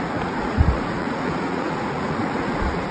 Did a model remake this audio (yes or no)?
yes